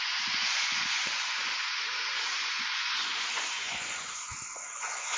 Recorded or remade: remade